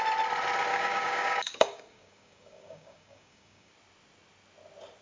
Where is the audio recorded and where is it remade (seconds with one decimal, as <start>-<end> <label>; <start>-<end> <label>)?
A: 0.0-0.7 recorded; 0.7-3.7 remade; 3.7-5.0 recorded